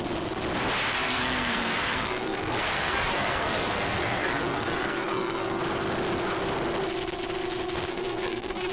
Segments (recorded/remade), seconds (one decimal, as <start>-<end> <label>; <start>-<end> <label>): 0.0-0.9 recorded; 0.9-5.6 remade; 5.6-7.9 recorded; 7.9-8.7 remade